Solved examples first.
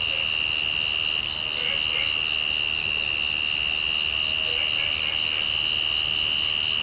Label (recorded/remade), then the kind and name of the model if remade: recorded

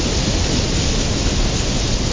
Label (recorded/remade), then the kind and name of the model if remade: recorded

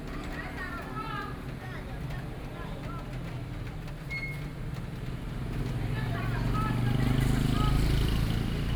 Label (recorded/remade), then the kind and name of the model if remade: recorded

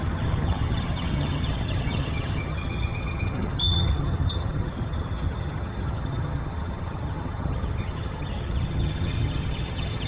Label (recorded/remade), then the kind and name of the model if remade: remade, vocoder, HiFi-GAN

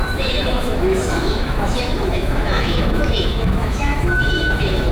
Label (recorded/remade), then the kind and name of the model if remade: remade, autoencoder, DAC-VAE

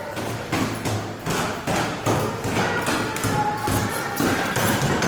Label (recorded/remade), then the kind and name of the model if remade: recorded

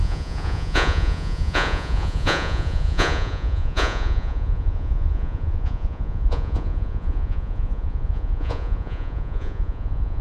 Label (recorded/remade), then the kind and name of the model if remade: remade, vocoder, Vocos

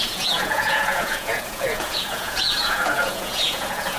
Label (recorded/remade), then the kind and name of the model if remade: remade, vocoder, Vocos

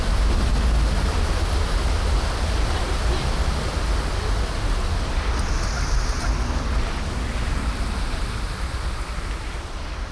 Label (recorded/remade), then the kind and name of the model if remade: recorded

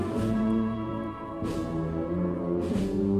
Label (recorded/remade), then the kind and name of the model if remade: remade, vocoder, Vocos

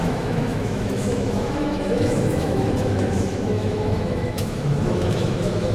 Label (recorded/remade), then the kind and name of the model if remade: remade, autoencoder, DAC-VAE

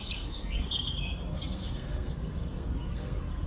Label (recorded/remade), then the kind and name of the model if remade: remade, codec, SNAC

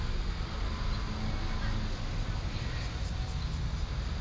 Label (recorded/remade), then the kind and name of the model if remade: recorded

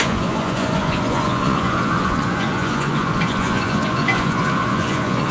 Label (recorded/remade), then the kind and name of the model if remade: remade, vocoder, Vocos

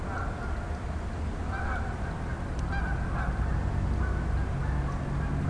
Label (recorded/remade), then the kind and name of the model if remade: recorded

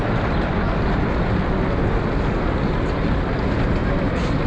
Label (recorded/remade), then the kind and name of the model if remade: recorded